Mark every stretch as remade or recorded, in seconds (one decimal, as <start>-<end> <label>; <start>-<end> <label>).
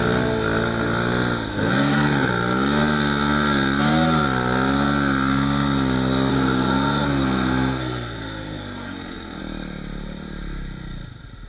0.0-1.5 recorded; 1.5-2.3 remade; 2.3-6.3 recorded; 6.3-9.4 remade; 9.4-11.5 recorded